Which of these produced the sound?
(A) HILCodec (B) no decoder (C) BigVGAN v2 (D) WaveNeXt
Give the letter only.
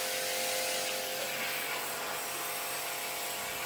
B